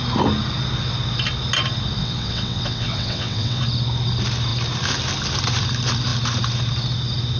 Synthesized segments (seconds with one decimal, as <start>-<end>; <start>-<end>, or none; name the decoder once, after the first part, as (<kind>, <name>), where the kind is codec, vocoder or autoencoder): 2.0-3.6 (vocoder, WaveNeXt)